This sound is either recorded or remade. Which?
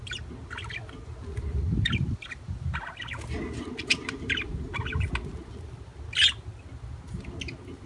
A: recorded